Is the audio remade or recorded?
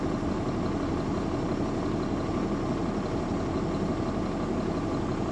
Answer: recorded